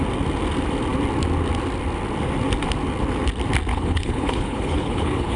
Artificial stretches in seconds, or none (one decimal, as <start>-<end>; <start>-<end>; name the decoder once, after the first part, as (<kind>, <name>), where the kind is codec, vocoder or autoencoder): 3.7-5.4 (codec, HILCodec)